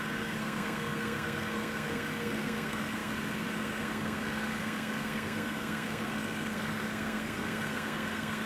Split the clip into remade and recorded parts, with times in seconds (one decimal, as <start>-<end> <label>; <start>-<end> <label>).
0.0-8.5 remade